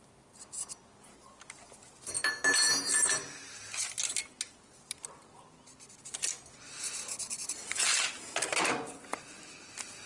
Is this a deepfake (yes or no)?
no